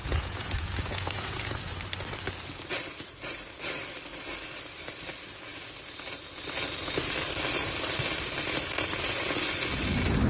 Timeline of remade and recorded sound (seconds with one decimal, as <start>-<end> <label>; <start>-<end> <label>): 0.0-1.7 remade; 1.7-10.3 recorded